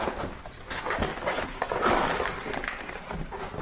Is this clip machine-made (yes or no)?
no